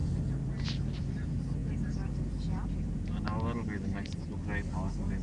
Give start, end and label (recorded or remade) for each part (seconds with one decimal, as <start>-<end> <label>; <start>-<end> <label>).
0.0-5.2 recorded